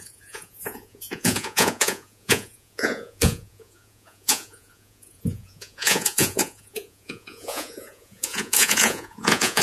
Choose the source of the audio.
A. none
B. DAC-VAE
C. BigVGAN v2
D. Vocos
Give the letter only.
D